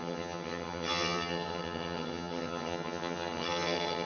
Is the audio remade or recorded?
remade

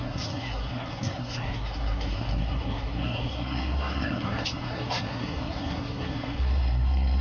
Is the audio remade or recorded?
remade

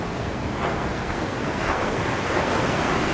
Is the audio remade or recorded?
remade